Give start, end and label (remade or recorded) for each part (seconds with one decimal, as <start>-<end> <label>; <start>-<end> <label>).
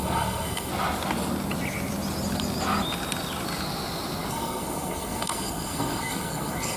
0.0-0.7 remade; 0.7-4.3 recorded; 4.3-6.8 remade